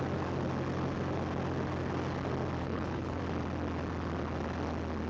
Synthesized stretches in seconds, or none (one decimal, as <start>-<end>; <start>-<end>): 2.6-3.2